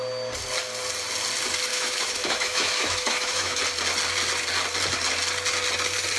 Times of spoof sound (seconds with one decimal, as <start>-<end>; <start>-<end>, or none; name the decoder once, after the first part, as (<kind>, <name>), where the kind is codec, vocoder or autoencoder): 1.7-3.6 (autoencoder, DAC-VAE)